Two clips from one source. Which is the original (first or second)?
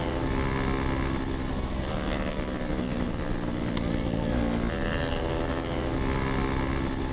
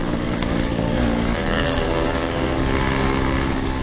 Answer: first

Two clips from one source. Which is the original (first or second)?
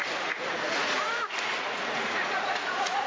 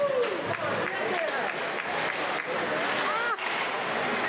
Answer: second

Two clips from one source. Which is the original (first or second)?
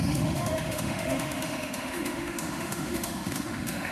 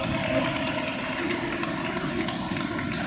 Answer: second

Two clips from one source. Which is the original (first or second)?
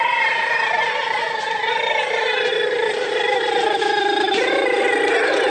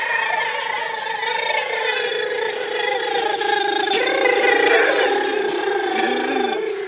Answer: second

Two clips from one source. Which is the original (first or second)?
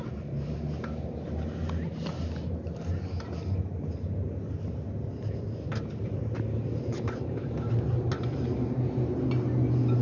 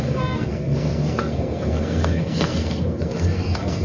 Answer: first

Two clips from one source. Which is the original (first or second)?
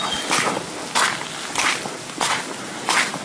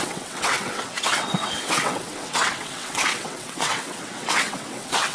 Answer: first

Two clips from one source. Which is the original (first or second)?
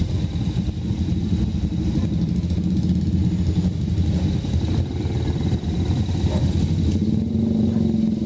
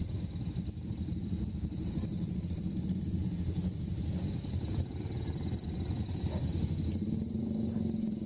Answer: first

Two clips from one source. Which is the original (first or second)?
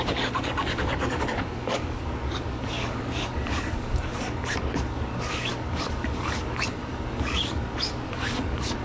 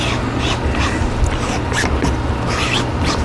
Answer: second